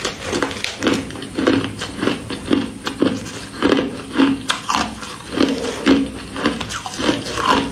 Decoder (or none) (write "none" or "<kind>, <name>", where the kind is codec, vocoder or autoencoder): none